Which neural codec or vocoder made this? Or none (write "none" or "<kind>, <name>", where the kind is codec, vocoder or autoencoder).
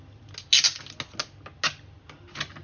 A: none